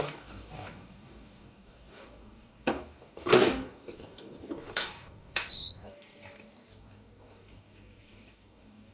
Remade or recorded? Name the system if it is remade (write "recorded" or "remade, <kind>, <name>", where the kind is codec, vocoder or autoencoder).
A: remade, codec, DAC